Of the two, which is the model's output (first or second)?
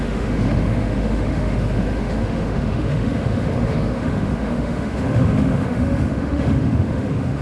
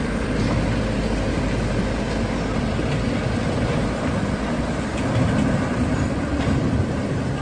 first